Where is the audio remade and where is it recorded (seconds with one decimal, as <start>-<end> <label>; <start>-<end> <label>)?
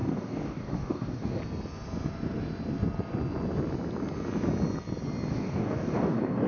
0.0-1.4 remade; 1.4-5.3 recorded; 5.3-6.5 remade